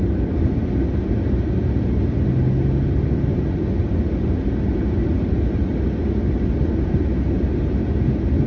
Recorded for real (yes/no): yes